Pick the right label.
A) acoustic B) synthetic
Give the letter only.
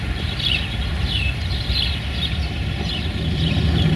B